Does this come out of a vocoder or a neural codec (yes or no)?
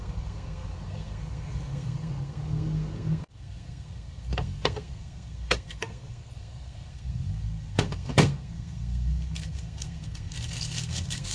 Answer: yes